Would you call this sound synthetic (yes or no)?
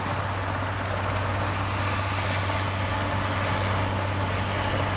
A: no